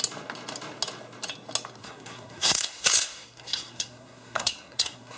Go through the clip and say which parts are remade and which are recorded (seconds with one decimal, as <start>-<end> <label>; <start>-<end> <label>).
0.0-1.8 recorded; 1.8-5.2 remade